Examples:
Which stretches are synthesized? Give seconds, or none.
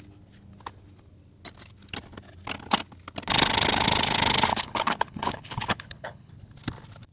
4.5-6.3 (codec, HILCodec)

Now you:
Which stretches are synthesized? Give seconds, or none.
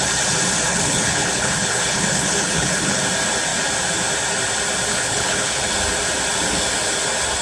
0.7-3.0 (codec, HILCodec); 4.9-5.7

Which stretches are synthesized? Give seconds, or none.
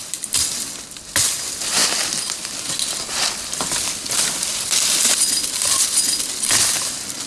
none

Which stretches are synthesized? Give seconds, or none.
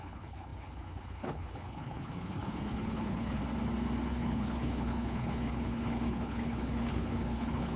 0.0-3.4 (codec, HILCodec); 4.1-7.8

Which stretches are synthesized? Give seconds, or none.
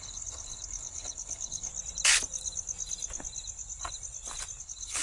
0.0-1.7 (codec, HILCodec); 4.6-5.0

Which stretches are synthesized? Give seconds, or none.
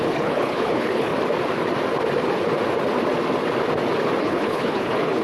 0.0-1.1 (codec, HILCodec); 4.2-5.2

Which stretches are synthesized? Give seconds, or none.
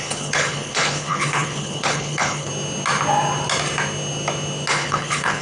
0.0-2.5 (codec, HILCodec); 4.7-5.4